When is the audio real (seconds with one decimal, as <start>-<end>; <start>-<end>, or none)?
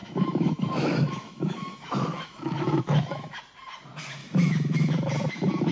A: 3.4-4.2; 4.9-5.7